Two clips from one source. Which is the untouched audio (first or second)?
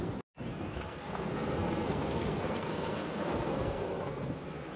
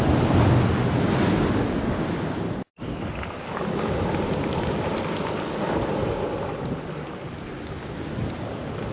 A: second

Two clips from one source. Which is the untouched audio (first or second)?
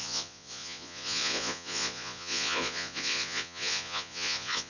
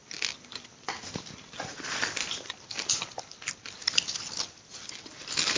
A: second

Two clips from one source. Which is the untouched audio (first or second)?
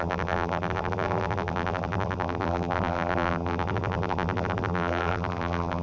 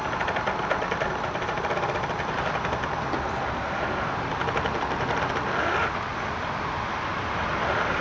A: second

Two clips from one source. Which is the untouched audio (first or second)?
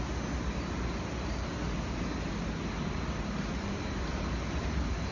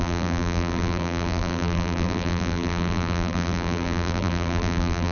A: first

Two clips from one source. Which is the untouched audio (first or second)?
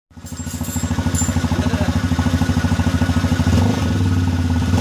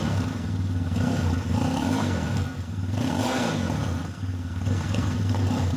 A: first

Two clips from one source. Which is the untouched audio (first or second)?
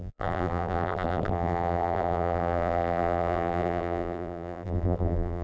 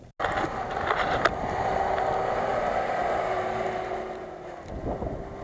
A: second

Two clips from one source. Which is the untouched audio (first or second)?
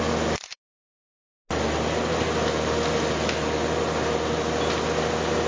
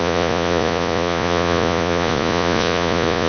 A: first